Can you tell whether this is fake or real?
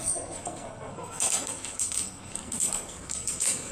fake